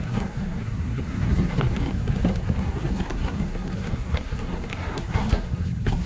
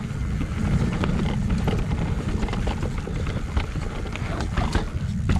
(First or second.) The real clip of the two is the second